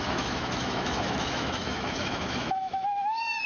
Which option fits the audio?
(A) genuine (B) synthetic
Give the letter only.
B